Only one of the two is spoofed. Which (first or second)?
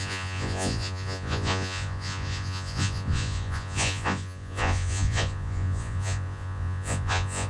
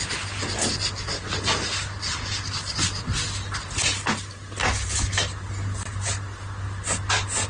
first